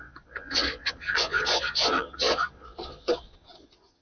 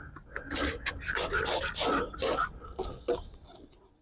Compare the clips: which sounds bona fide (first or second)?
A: second